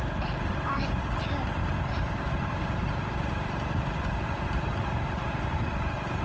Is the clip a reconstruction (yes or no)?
no